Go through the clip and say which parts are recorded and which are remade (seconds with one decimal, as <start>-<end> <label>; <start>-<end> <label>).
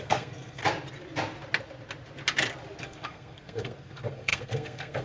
0.0-0.6 remade; 0.6-2.8 recorded; 2.8-5.0 remade